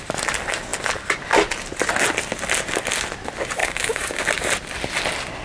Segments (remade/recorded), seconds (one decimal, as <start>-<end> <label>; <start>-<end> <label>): 0.0-3.6 recorded; 3.6-4.2 remade; 4.2-5.4 recorded